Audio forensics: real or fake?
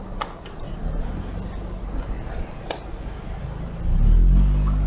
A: real